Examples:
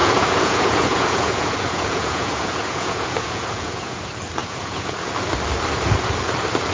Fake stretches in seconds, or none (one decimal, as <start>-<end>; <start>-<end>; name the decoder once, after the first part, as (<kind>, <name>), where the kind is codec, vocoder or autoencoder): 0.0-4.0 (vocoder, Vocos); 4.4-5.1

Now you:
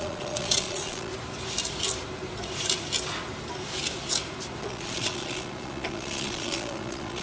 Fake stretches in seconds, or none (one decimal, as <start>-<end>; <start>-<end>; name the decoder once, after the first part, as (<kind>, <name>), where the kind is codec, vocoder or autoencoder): 0.0-1.1 (vocoder, Vocos); 4.6-7.2

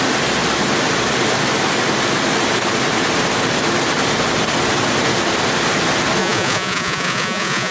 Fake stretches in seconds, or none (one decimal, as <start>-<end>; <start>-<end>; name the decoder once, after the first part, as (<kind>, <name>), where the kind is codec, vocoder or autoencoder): 6.2-7.7 (vocoder, Vocos)